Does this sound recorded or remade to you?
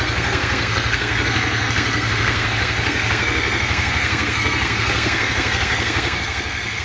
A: remade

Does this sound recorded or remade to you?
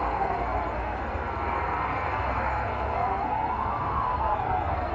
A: remade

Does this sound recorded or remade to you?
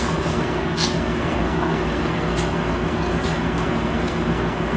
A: remade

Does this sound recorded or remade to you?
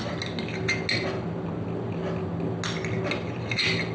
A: recorded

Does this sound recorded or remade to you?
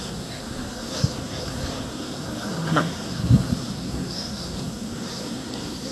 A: remade